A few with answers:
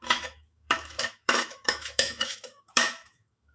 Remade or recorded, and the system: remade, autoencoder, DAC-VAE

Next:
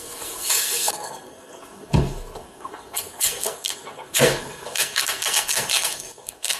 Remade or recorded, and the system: remade, codec, SNAC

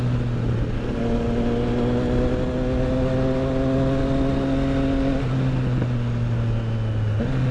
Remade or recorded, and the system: recorded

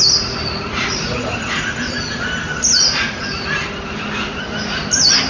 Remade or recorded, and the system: recorded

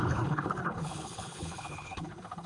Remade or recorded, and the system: remade, codec, HILCodec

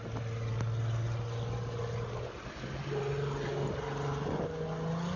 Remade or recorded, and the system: recorded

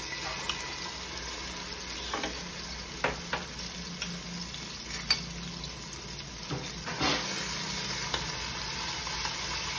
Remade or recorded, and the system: recorded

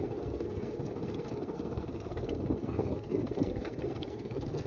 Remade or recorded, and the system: remade, codec, SNAC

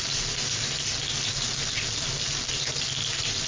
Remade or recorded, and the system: recorded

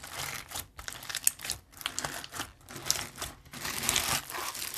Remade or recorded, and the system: recorded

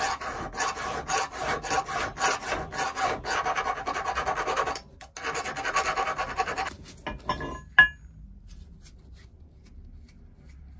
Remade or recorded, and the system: recorded